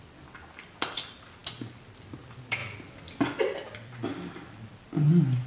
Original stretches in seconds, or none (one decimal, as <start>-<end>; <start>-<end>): 0.0-5.5